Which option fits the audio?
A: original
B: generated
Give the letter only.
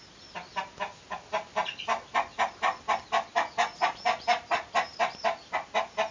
A